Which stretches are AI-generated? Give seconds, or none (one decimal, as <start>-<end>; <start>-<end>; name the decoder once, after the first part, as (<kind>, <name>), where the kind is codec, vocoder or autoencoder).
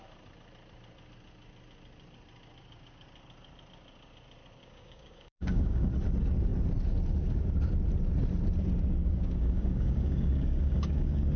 4.6-5.9 (codec, DAC); 9.0-11.4